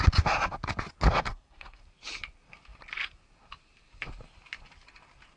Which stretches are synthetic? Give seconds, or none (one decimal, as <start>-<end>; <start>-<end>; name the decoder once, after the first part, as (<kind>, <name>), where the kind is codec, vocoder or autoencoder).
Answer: 1.3-1.8 (codec, SNAC)